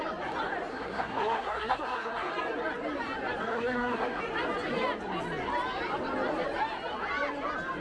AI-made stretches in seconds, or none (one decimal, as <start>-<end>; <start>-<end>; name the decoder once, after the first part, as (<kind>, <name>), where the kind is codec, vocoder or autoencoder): 0.7-2.3 (codec, SNAC); 3.5-4.2